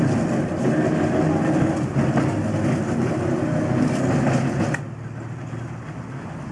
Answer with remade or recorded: recorded